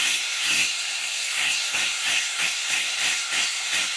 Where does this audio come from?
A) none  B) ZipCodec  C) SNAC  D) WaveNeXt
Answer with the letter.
C